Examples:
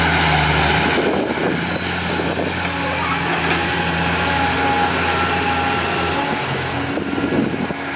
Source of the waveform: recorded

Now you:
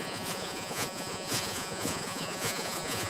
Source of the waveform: remade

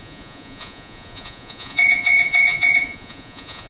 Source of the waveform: remade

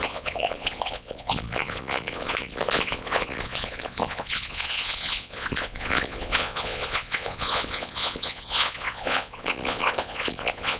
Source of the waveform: remade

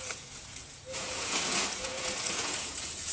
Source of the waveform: remade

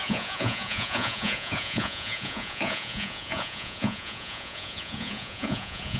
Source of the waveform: remade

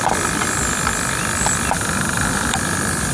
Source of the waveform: recorded